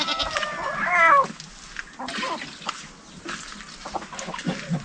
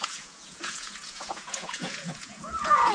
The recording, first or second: first